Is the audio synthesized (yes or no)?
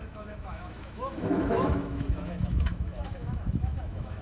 yes